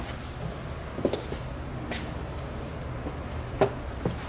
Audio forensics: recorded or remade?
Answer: recorded